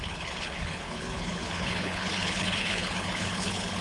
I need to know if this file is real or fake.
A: fake